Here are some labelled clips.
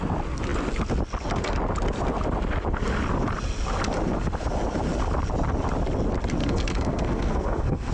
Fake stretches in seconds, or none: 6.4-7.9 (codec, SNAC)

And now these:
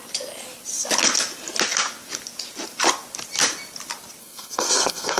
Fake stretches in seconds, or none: 4.2-5.2 (codec, SNAC)